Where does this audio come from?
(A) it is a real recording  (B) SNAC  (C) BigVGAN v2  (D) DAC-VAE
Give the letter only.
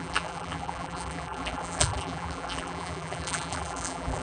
C